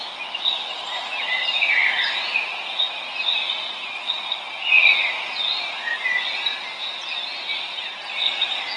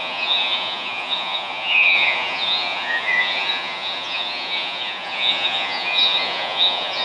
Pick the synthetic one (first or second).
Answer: second